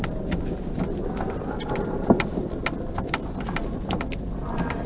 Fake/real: real